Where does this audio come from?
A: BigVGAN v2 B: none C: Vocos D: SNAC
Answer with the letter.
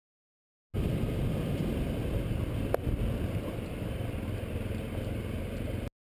B